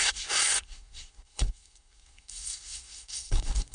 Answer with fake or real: fake